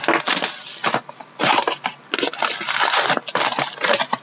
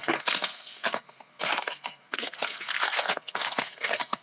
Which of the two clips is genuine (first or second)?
first